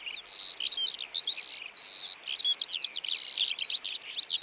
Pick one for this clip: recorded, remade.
recorded